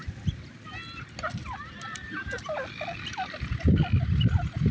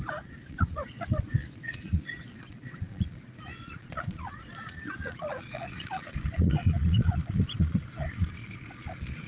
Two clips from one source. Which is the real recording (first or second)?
first